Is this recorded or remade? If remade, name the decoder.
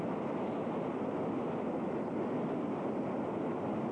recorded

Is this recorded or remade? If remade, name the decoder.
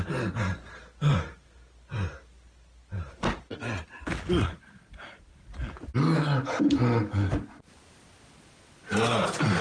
recorded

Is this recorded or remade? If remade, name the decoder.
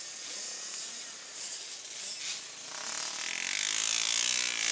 recorded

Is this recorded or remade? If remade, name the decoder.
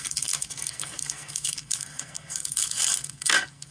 remade, codec, SNAC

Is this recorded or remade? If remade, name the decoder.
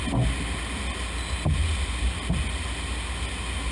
recorded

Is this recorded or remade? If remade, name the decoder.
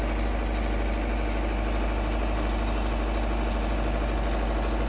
recorded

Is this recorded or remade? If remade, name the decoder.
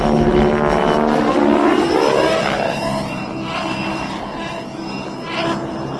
recorded